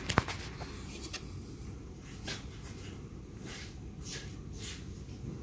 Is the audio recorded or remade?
recorded